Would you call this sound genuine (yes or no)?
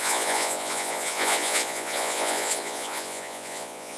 no